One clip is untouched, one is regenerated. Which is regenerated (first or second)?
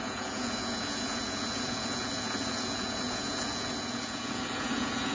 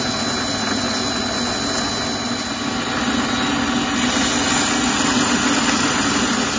first